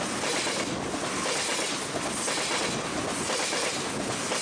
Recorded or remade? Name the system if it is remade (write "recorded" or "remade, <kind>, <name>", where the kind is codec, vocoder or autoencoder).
recorded